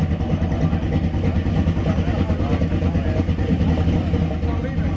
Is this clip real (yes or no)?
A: yes